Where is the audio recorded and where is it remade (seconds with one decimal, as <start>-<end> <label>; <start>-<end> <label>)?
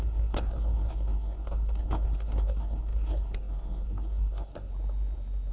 0.0-4.7 remade; 4.7-5.5 recorded